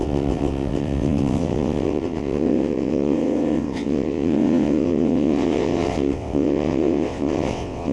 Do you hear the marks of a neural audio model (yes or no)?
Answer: yes